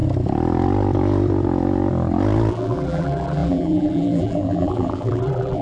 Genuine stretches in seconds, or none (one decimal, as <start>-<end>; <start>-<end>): 0.0-2.5